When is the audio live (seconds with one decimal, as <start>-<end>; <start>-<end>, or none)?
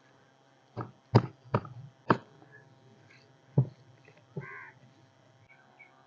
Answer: 0.0-6.1